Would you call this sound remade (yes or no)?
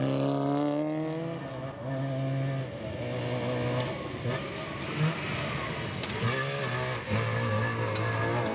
no